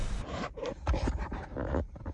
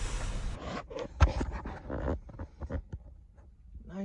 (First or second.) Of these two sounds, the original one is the second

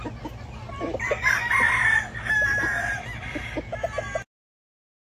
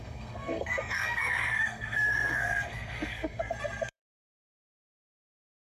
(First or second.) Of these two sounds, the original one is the first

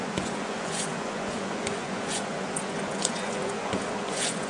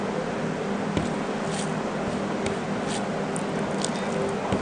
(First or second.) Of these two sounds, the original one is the second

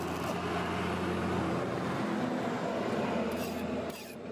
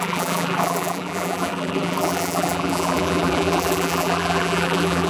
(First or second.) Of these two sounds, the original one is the first